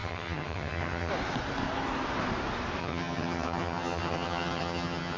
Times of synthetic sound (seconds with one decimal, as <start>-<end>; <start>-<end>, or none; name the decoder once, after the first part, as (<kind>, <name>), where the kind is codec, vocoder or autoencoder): 0.0-1.1 (vocoder, HiFi-GAN); 2.8-5.2